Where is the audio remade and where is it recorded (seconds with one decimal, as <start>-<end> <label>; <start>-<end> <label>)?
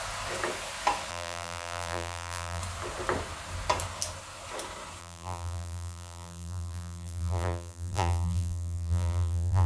0.0-1.1 recorded; 1.1-2.6 remade; 2.6-5.0 recorded; 5.0-9.7 remade